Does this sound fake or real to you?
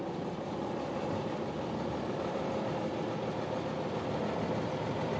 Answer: real